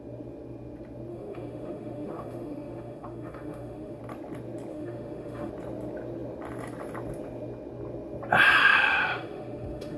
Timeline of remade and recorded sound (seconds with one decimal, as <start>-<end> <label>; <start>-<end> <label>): 0.0-1.1 recorded; 1.1-4.0 remade; 4.0-4.7 recorded; 4.7-5.5 remade; 5.5-8.6 recorded; 8.6-10.0 remade